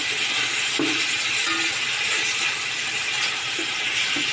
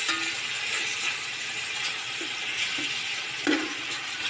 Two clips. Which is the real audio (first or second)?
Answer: second